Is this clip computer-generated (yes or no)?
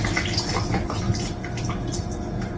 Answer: no